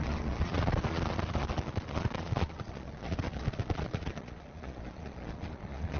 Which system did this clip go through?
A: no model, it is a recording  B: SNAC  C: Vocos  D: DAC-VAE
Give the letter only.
C